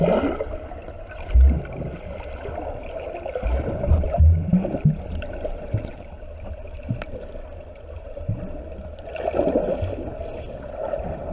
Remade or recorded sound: recorded